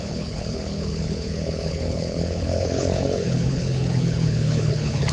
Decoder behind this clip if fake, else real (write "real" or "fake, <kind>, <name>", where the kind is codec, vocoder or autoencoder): fake, codec, HILCodec